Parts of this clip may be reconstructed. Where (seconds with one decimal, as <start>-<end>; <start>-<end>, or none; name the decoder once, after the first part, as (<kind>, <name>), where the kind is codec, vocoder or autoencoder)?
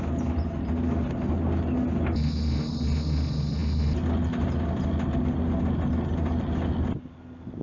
none